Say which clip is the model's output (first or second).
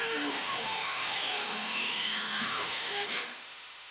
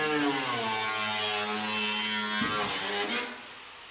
first